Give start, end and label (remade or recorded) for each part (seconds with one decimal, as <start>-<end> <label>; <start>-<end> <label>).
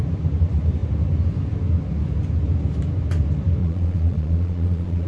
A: 0.0-3.6 recorded; 3.6-5.1 remade